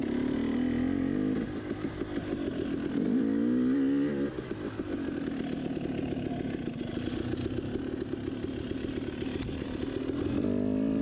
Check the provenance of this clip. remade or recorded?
recorded